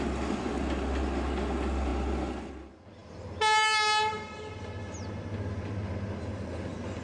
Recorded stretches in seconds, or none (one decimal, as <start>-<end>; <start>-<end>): 0.0-7.0